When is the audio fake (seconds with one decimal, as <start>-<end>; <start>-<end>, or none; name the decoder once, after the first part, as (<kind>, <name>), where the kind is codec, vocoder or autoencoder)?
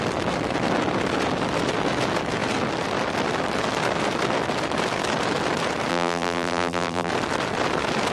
5.9-7.1 (vocoder, BigVGAN v2)